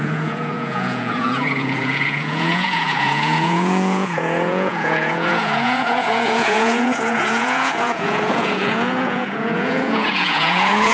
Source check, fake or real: fake